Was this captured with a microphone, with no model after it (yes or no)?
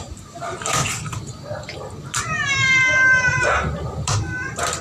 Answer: yes